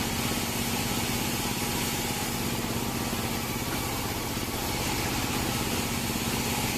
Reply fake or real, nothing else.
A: real